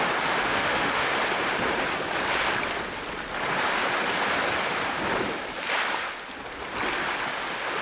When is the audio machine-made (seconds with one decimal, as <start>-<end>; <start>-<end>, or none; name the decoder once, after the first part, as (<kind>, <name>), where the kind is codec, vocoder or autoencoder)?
0.5-1.1 (autoencoder, DAC-VAE)